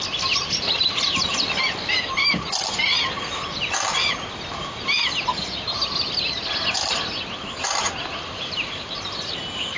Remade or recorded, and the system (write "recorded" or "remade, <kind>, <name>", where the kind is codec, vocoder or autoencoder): recorded